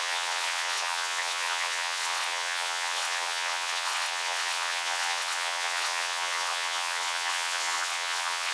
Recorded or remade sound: remade